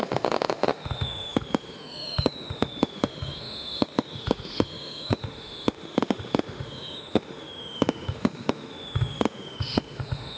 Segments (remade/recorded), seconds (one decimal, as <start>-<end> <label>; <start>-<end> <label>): 0.0-10.4 remade